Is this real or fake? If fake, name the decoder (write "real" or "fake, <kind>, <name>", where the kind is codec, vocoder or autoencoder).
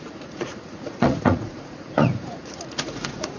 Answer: fake, vocoder, Vocos